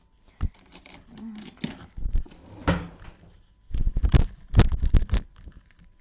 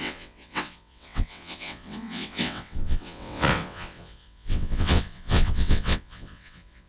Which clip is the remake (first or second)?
second